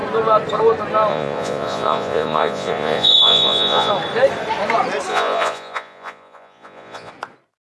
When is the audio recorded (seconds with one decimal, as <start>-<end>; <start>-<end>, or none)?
0.0-1.1; 3.9-5.1; 7.1-7.6